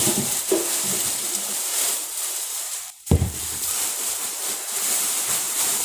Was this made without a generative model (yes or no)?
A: no